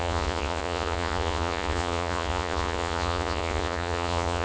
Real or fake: fake